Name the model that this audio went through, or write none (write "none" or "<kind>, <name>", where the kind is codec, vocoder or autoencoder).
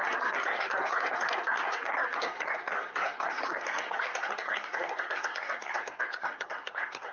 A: codec, SNAC